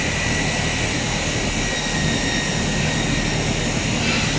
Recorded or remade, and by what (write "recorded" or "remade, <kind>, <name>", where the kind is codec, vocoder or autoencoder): recorded